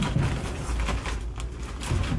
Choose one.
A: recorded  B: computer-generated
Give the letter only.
A